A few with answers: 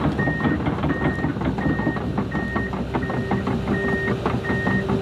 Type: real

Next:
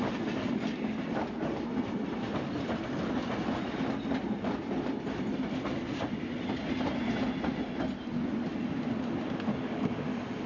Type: real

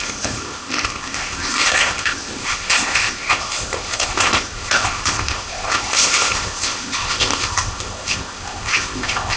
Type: fake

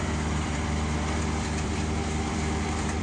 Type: fake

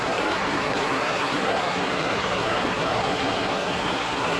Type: fake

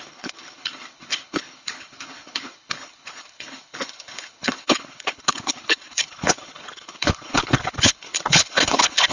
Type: fake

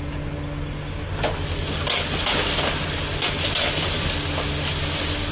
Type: real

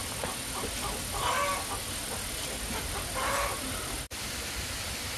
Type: real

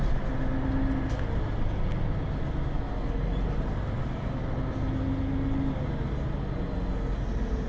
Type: real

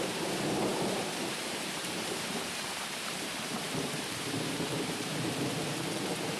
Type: fake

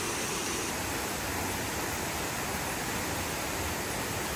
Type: real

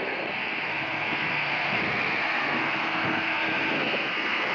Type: fake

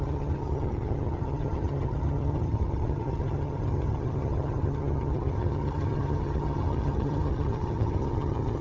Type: fake